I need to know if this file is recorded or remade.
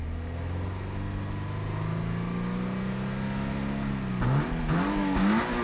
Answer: recorded